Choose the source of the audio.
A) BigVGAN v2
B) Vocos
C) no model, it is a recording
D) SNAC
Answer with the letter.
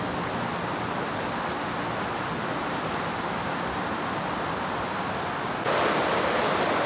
C